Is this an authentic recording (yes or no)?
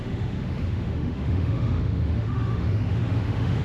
no